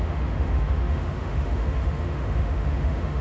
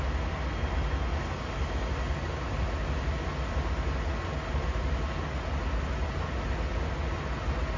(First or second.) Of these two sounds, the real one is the second